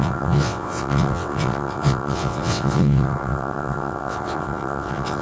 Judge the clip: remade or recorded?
remade